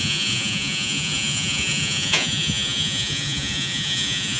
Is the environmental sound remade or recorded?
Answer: remade